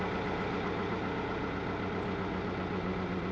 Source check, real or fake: real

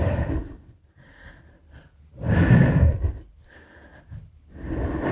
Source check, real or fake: real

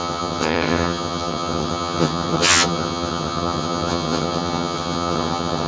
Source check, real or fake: fake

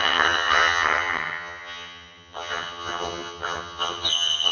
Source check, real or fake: fake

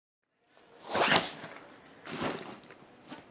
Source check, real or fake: real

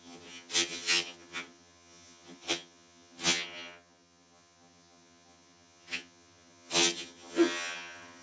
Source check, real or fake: fake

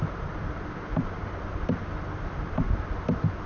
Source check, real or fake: real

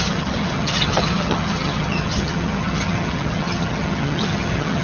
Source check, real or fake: fake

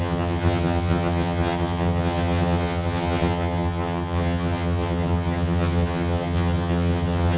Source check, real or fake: fake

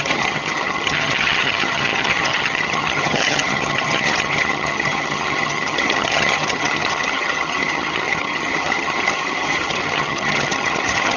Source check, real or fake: fake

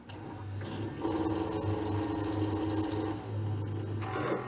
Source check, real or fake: real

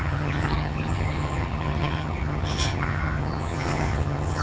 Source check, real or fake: fake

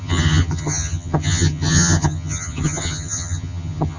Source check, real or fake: fake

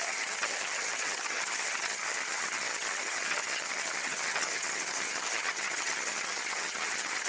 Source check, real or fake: fake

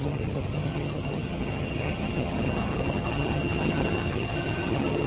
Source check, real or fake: fake